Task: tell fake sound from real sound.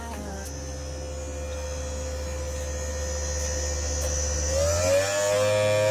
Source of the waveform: real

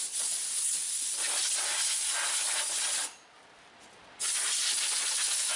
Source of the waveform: real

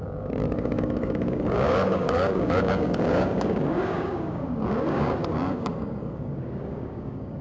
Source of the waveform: fake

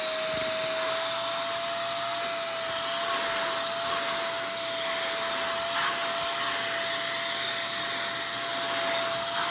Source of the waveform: real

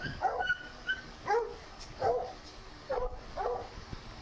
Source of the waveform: fake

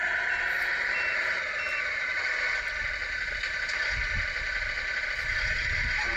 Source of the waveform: real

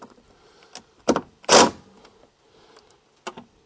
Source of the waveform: real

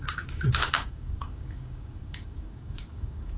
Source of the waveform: fake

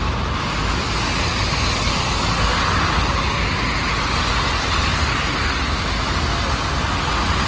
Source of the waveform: real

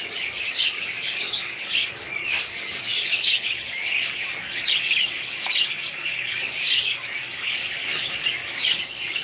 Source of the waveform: fake